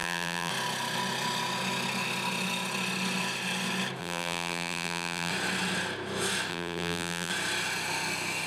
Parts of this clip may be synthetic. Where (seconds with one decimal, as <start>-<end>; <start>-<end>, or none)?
0.0-0.5; 4.0-5.3; 6.5-7.3